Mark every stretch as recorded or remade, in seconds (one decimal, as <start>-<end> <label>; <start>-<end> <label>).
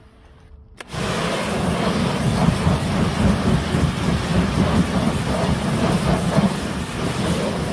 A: 0.0-2.4 recorded; 2.4-3.4 remade; 3.4-7.7 recorded